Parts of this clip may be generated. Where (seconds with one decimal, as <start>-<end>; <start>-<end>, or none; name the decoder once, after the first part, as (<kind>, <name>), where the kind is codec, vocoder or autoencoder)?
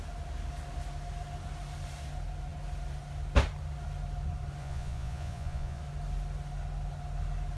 4.6-5.8 (vocoder, Vocos)